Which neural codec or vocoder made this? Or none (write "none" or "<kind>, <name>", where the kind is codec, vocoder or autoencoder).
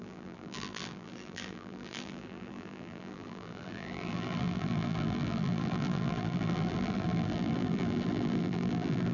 vocoder, BigVGAN v2